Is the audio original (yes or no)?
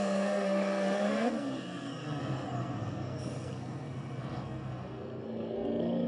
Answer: no